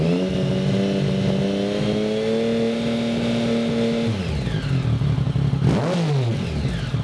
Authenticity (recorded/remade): recorded